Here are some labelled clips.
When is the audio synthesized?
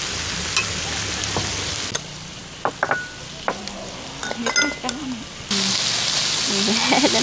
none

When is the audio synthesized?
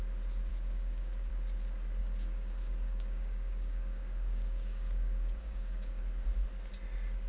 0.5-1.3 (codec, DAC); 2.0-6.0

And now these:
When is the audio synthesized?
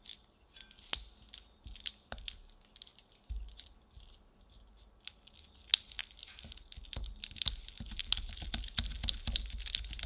none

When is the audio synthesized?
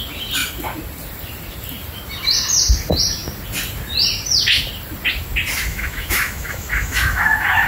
5.7-7.7 (autoencoder, DAC-VAE)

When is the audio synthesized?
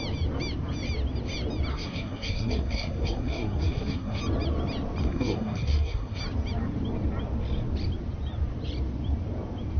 1.7-4.2 (codec, SNAC); 5.0-6.2